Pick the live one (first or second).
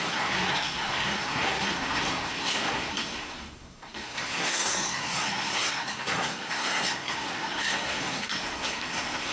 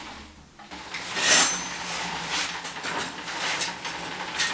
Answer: second